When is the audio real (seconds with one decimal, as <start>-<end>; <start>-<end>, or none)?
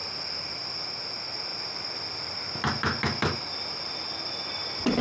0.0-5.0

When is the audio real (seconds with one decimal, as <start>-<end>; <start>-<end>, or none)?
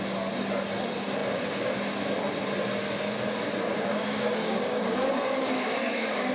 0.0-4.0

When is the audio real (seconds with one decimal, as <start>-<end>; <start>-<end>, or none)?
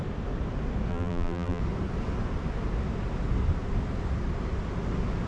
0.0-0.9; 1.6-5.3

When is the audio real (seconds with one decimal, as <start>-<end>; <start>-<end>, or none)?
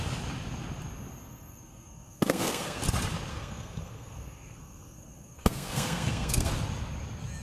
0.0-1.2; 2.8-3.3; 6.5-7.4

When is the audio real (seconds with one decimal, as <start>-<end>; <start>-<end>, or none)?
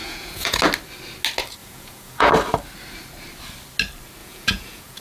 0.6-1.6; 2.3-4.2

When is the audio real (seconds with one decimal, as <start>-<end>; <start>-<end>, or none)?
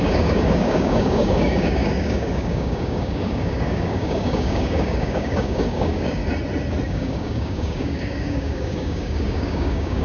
6.2-6.9